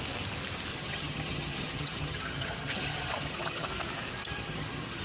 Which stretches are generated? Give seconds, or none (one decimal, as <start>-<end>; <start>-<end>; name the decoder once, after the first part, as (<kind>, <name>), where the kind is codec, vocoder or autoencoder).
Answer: 0.7-3.7 (vocoder, HiFi-GAN); 4.2-5.0